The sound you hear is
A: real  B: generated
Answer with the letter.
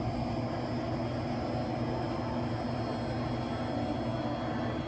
A